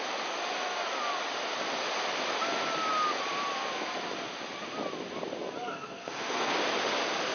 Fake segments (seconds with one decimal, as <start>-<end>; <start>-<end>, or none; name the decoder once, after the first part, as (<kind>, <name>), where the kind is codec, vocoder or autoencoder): 5.6-6.5 (codec, SNAC)